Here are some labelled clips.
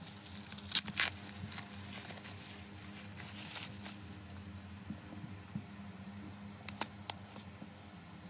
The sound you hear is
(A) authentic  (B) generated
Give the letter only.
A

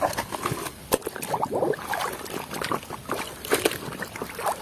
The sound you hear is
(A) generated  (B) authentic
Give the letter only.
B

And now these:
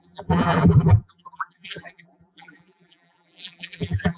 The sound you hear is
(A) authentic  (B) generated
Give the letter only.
B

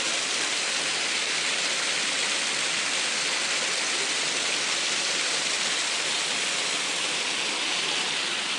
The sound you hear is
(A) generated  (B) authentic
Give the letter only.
B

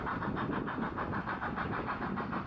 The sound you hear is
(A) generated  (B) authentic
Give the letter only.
B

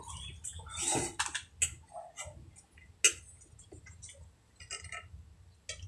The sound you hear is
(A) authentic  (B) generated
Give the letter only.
A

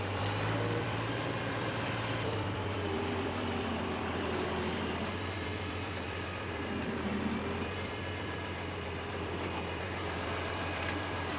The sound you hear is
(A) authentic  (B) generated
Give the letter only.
B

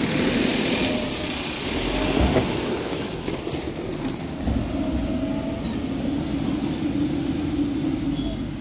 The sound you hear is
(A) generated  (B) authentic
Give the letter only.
B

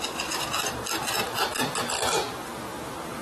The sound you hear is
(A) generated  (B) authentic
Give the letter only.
B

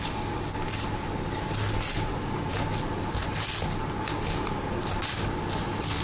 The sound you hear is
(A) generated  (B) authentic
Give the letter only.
B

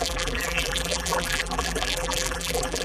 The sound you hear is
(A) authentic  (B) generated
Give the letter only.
B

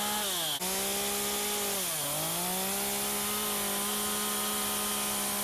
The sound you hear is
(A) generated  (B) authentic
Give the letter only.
B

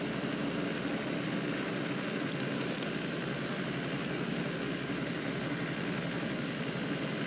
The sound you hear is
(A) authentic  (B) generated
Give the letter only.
A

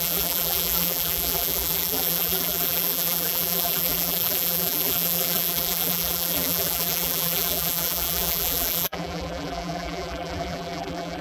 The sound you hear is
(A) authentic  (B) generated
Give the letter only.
B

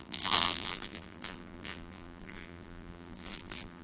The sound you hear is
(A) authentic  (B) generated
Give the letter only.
B